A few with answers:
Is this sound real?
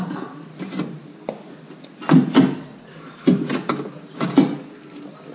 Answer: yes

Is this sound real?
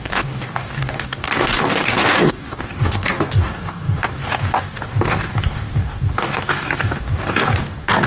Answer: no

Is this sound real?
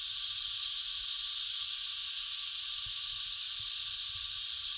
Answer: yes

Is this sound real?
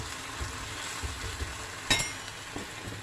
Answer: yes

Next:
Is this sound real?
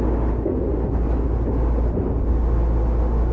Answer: yes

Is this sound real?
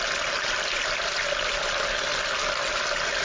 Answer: yes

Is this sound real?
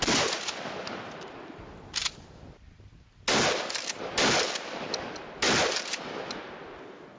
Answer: yes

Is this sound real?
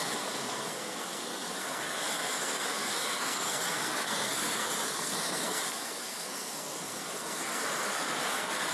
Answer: no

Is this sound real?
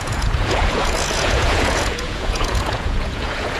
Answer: no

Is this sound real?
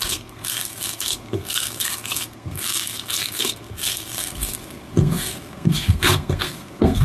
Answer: no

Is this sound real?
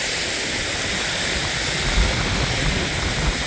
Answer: yes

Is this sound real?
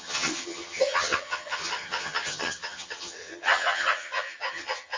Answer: no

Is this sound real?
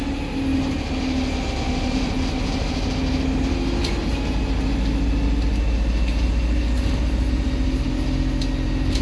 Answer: yes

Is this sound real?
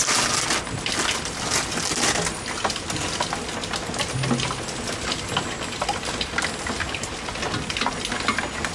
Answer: yes